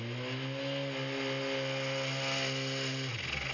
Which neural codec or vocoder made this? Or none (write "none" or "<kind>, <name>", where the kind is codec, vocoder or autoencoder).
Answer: none